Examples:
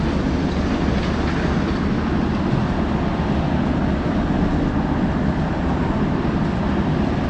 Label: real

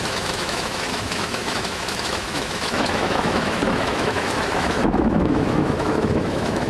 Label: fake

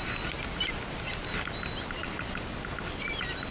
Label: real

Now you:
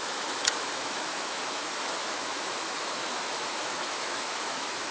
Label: fake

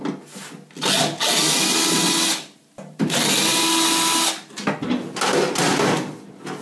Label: real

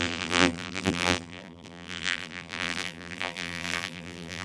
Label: fake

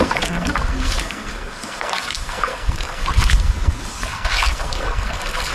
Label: fake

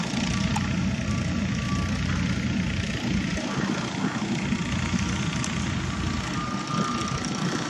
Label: real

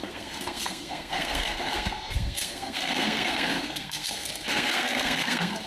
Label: fake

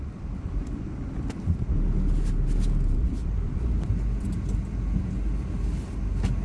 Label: real